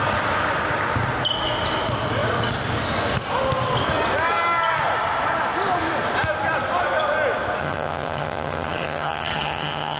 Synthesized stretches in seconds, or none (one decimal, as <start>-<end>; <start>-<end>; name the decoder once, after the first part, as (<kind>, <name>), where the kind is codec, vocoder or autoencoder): 7.6-10.0 (vocoder, HiFi-GAN)